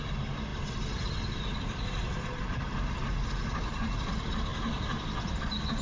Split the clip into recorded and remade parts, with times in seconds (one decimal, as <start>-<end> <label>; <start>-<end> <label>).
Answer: 0.0-4.5 recorded; 4.5-5.3 remade; 5.3-5.8 recorded